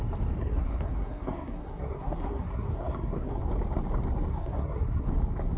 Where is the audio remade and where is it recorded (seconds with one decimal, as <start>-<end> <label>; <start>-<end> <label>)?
0.0-0.4 recorded; 0.4-3.4 remade; 3.4-4.3 recorded; 4.3-5.1 remade; 5.1-5.6 recorded